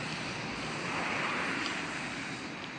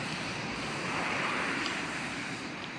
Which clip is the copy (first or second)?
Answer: second